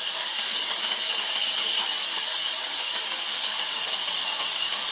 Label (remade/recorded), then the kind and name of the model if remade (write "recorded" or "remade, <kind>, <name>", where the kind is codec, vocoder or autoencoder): remade, codec, DAC